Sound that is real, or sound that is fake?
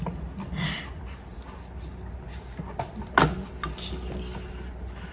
real